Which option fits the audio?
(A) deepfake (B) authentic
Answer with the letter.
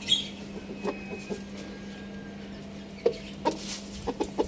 B